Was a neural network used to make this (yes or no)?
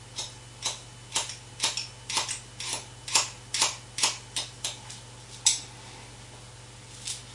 no